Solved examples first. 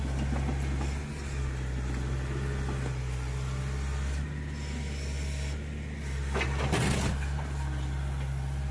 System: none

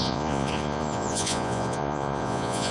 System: vocoder, Vocos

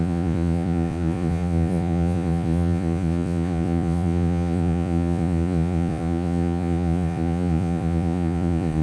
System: vocoder, Vocos